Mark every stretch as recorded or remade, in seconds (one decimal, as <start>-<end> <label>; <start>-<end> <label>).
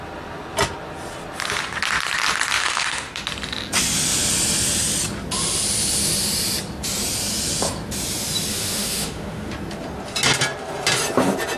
0.0-2.6 recorded; 2.6-3.2 remade; 3.2-8.5 recorded; 8.5-9.5 remade; 9.5-11.6 recorded